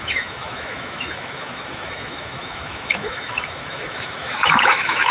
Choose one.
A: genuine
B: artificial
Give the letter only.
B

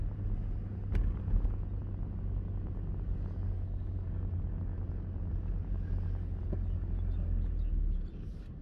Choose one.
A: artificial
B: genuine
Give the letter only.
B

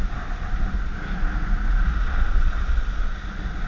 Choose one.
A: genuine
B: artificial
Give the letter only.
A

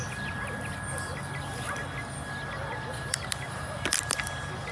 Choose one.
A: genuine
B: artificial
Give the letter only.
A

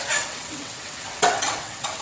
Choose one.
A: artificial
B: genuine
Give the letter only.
A